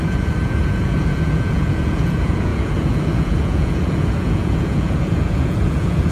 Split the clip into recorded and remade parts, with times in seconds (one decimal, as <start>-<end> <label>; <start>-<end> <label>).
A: 0.0-6.1 remade